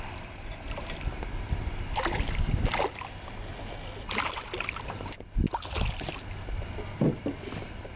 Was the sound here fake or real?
real